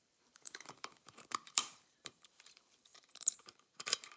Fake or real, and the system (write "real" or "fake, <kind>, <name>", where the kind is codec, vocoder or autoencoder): fake, vocoder, BigVGAN v2